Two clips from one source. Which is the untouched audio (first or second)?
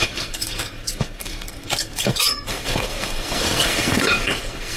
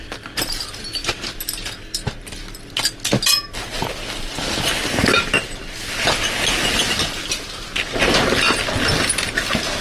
second